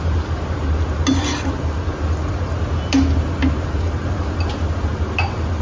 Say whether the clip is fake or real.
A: real